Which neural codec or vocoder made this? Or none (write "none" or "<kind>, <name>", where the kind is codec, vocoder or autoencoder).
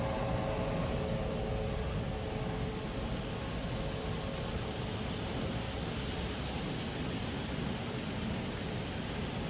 none